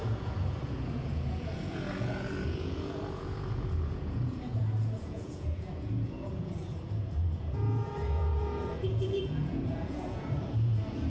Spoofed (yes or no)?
yes